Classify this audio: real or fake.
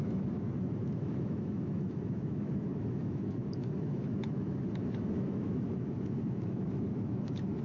fake